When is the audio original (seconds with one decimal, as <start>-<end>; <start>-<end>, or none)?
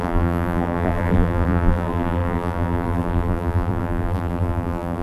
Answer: none